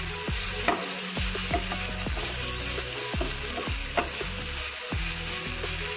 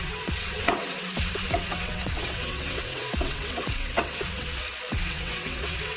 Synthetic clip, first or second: second